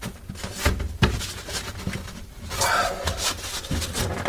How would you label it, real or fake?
real